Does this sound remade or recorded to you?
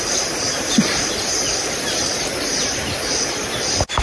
remade